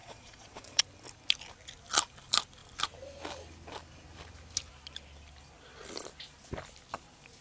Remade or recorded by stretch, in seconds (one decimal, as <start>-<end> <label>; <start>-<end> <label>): 0.0-0.8 remade; 0.8-7.4 recorded

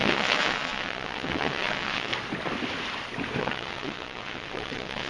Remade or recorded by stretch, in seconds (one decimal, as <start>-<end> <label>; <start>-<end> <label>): 0.0-2.1 remade; 2.1-3.4 recorded; 3.4-5.1 remade

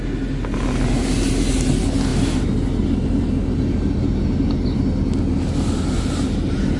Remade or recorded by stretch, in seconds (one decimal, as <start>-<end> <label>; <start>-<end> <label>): 0.0-6.8 recorded

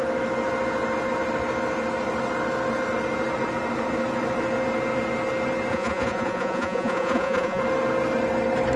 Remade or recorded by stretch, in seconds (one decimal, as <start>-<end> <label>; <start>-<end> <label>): 0.0-5.7 recorded; 5.7-7.6 remade; 7.6-8.8 recorded

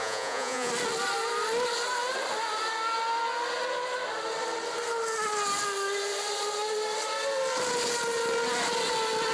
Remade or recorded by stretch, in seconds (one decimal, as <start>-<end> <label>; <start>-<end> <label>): 0.0-0.7 remade; 0.7-9.3 recorded

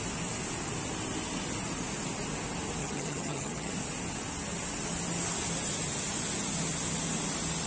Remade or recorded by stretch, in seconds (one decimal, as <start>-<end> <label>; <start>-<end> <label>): 0.0-2.8 recorded; 2.8-3.7 remade; 3.7-7.7 recorded